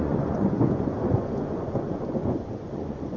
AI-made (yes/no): yes